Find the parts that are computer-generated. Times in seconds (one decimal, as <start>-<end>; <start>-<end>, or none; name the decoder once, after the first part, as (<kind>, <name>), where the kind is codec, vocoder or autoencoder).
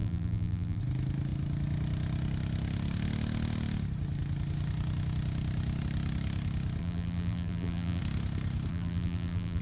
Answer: 0.0-0.8 (vocoder, BigVGAN v2); 6.8-8.0; 8.7-9.6